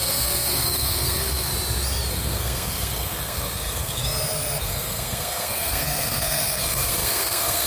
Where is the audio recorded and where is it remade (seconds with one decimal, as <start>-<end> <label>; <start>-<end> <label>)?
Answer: 0.0-1.5 remade; 1.5-2.1 recorded; 2.1-4.0 remade; 4.0-4.6 recorded; 4.6-7.7 remade